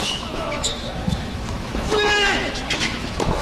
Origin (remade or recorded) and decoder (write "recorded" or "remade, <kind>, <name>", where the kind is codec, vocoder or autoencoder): remade, autoencoder, DAC-VAE